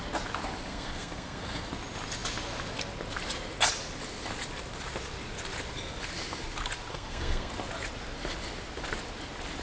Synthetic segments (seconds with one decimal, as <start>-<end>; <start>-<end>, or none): 0.7-1.7; 6.9-7.5